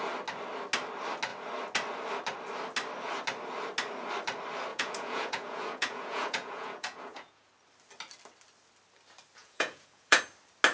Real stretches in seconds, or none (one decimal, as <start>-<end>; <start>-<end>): 0.0-4.7; 7.5-9.4; 10.2-10.7